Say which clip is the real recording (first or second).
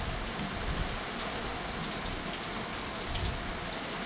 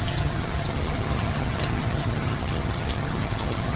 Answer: first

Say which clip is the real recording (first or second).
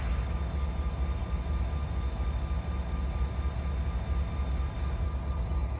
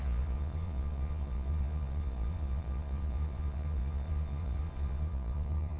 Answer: first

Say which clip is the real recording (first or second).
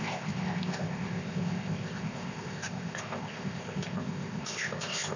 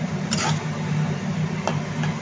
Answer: second